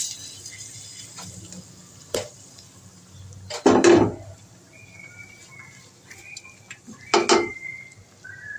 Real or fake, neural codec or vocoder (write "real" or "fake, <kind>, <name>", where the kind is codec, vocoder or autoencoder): real